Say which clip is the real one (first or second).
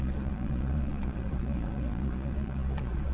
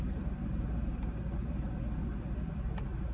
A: second